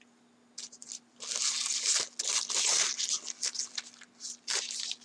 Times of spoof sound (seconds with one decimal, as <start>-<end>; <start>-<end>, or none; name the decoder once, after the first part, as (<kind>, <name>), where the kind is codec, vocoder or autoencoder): none